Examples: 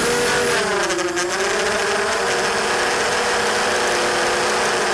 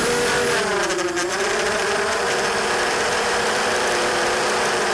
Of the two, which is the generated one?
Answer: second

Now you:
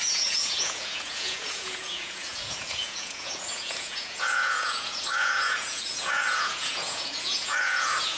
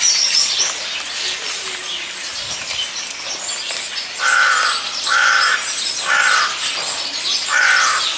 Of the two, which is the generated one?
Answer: first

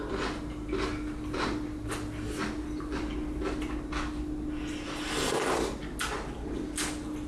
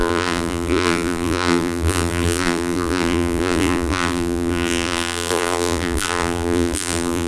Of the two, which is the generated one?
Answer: second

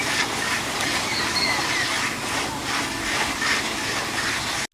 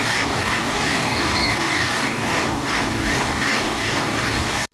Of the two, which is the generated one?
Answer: second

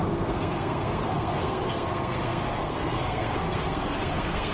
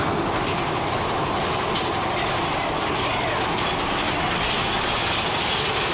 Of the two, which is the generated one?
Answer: first